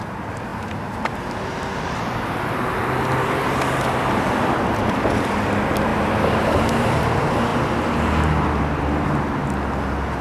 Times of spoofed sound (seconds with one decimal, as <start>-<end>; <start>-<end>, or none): 0.0-9.4